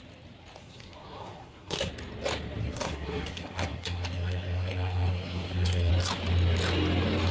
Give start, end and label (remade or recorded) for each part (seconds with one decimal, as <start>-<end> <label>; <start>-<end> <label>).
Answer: 0.0-0.6 recorded; 0.6-1.9 remade; 1.9-2.6 recorded; 2.6-5.9 remade; 5.9-7.3 recorded